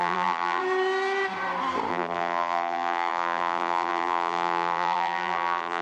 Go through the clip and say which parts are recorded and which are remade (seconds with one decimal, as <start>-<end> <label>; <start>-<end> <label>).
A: 0.0-0.6 remade; 0.6-1.9 recorded; 1.9-5.8 remade